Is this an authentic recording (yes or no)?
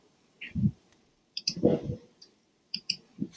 no